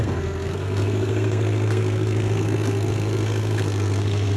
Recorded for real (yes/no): no